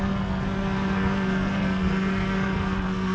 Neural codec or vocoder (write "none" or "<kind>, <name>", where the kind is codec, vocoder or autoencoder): codec, SNAC